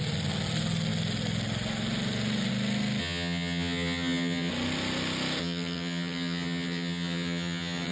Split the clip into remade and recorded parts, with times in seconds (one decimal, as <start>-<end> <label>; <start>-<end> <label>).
0.0-3.0 recorded; 3.0-4.5 remade; 4.5-5.4 recorded; 5.4-7.9 remade